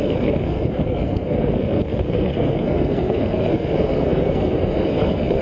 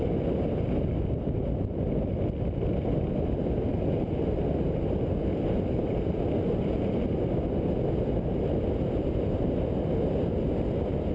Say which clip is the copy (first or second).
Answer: first